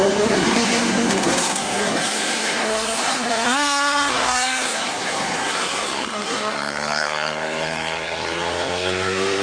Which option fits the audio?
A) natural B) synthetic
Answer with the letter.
B